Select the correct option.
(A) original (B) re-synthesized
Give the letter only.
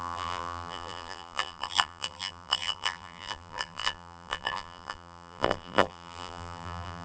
B